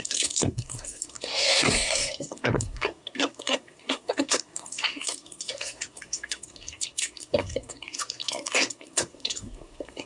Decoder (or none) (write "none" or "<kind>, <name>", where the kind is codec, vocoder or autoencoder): codec, SNAC